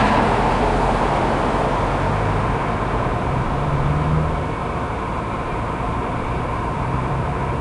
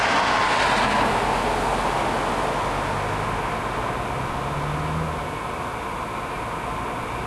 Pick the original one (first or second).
second